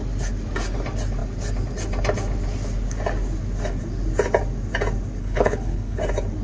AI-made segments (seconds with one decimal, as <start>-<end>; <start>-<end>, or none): 5.2-6.0